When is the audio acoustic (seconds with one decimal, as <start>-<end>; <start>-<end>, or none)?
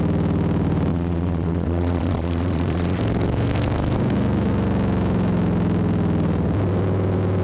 0.0-0.9; 3.0-7.4